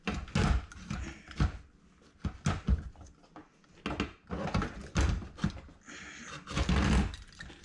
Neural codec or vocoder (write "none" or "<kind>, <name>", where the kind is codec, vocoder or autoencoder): none